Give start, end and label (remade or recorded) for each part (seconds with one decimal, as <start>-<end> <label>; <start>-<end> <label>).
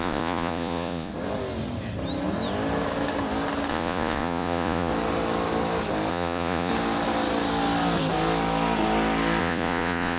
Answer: 0.0-1.1 remade; 1.1-3.7 recorded; 3.7-4.9 remade; 4.9-6.1 recorded; 6.1-6.7 remade; 6.7-9.4 recorded; 9.4-10.2 remade